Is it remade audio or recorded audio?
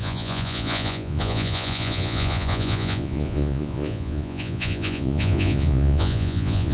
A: remade